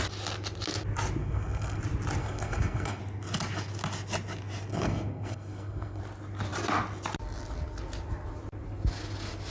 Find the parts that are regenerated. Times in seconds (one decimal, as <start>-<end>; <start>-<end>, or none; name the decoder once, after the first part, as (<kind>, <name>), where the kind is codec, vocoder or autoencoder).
1.2-1.8 (codec, SNAC); 2.2-3.0; 4.7-6.0